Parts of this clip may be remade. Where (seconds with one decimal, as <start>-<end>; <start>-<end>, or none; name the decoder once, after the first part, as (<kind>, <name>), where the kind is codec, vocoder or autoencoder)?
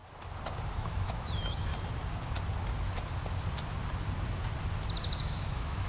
0.7-1.7 (autoencoder, DAC-VAE); 5.2-5.9